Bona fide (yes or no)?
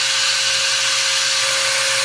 yes